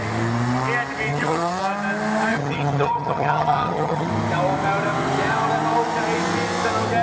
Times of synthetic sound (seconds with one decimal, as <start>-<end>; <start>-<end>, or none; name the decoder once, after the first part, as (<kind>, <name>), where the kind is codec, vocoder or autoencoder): 1.1-1.6 (vocoder, HiFi-GAN); 2.3-4.1